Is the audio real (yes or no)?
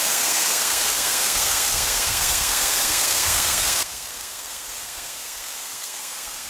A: no